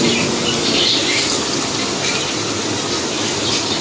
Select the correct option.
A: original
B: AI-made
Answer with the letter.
A